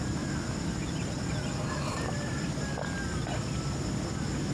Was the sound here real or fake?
real